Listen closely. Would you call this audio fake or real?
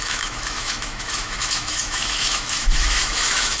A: fake